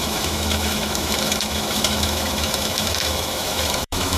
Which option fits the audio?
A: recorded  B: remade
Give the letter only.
B